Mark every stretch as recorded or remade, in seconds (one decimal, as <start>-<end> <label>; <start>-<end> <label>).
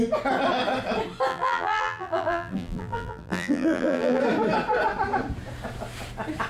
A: 0.0-1.3 recorded; 1.3-4.2 remade; 4.2-6.5 recorded